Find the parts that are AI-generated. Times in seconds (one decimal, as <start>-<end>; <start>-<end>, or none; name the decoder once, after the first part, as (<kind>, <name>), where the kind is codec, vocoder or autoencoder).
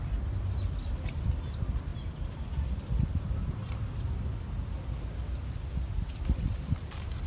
none